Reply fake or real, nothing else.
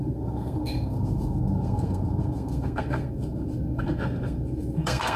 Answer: fake